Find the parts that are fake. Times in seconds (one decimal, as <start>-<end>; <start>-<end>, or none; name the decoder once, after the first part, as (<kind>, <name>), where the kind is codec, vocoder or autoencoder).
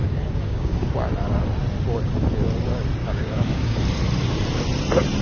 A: 0.0-0.9 (codec, DAC); 3.0-3.8